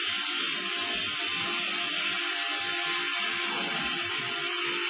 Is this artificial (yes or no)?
no